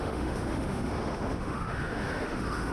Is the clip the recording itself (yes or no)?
no